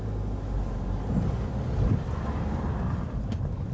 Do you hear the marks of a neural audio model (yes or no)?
no